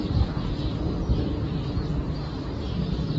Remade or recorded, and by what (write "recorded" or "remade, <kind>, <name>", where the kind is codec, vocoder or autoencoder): recorded